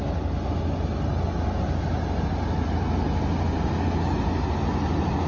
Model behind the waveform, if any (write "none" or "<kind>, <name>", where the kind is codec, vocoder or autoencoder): none